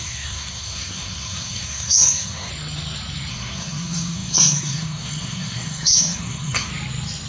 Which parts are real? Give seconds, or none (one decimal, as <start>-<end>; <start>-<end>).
2.5-3.3; 6.7-7.3